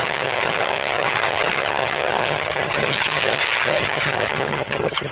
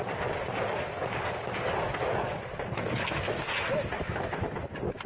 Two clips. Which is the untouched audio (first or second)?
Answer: second